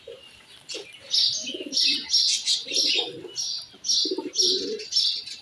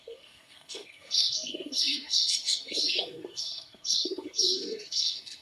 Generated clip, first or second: second